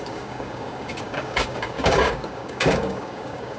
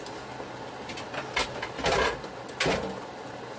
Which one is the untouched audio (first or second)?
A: second